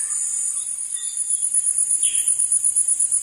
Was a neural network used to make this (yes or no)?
yes